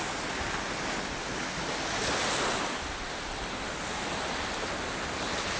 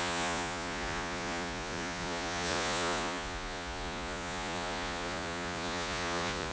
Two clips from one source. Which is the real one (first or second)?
first